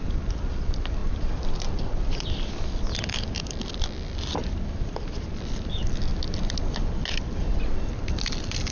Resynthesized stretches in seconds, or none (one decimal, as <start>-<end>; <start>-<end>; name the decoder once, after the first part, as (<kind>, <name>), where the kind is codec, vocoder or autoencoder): 0.0-6.1 (vocoder, BigVGAN v2); 8.1-8.7